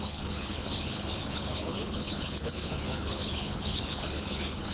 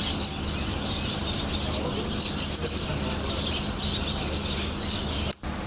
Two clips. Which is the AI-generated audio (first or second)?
first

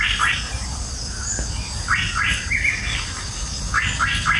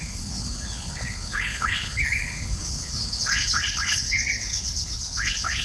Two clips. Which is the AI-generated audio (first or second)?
second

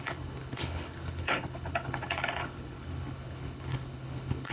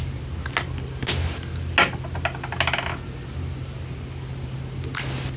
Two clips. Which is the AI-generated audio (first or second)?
first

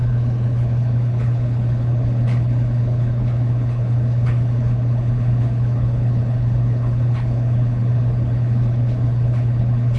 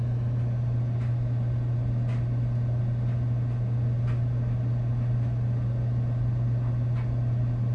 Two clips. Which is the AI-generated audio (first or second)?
first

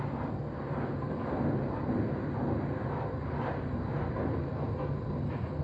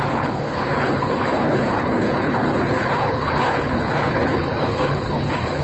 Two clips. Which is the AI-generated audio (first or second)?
second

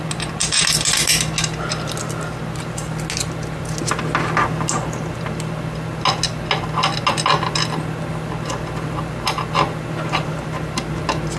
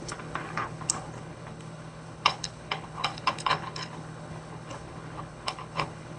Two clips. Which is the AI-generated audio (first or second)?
second